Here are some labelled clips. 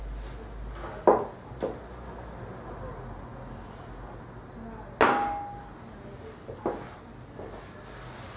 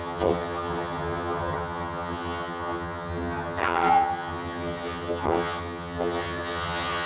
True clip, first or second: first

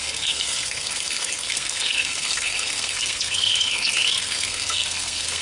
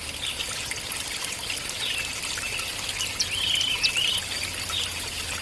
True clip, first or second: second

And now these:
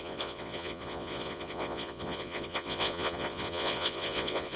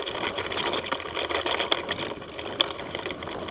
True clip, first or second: second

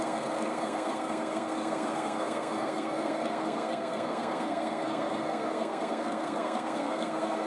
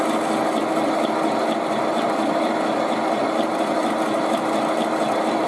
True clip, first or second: second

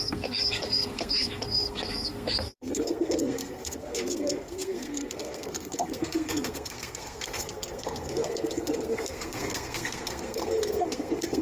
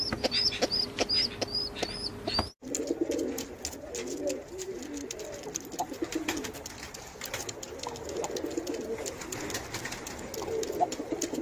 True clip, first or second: second